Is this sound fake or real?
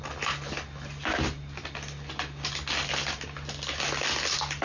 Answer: real